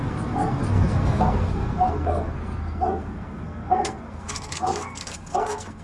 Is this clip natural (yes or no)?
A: no